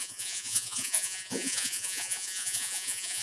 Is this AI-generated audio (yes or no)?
yes